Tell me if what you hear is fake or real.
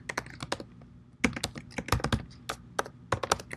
real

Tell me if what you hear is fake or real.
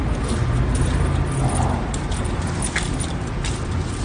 real